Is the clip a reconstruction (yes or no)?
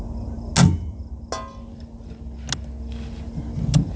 no